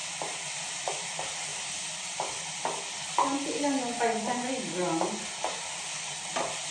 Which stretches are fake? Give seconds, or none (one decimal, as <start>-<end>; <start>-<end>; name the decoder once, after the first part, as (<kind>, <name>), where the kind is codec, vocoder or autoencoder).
none